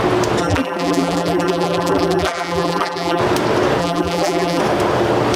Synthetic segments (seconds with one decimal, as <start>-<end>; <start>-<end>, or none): 0.4-3.2; 3.8-4.6